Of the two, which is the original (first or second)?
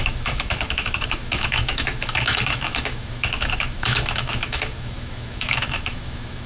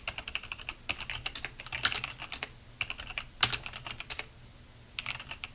second